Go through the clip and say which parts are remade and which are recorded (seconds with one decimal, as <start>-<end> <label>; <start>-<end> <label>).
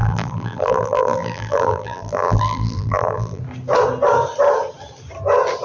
0.0-3.4 remade; 3.4-5.6 recorded